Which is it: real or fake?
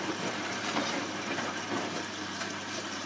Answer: fake